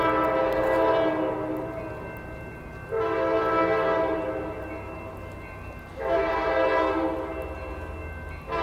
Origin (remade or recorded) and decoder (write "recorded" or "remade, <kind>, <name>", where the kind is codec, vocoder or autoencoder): recorded